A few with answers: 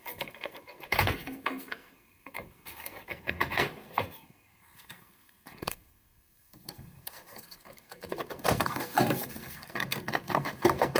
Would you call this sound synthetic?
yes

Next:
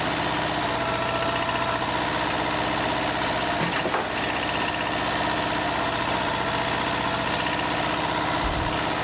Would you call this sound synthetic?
no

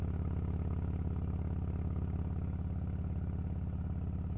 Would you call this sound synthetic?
no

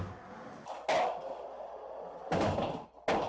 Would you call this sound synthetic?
no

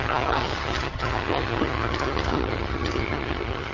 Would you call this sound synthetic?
yes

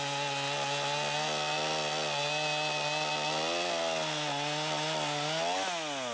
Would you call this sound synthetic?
no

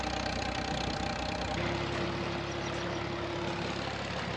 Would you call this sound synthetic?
no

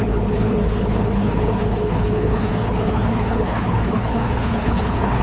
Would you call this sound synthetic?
yes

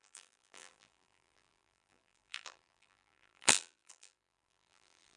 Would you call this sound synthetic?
yes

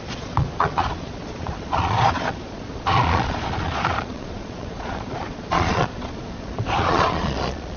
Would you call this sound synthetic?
yes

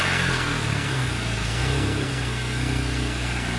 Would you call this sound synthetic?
yes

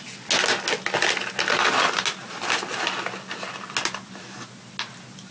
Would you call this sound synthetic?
no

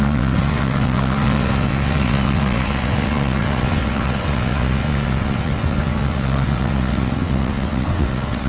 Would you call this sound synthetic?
yes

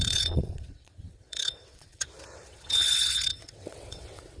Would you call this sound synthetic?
yes